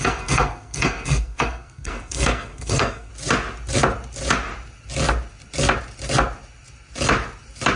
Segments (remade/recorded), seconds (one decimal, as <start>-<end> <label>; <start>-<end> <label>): 0.0-3.1 remade; 3.1-7.8 recorded